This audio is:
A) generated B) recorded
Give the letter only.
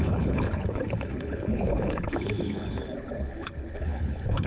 A